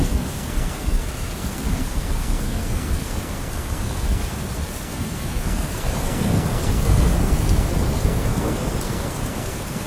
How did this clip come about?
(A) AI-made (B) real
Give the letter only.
A